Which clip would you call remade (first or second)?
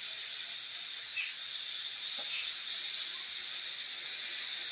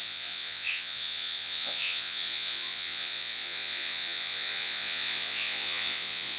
second